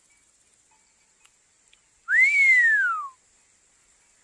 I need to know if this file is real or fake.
real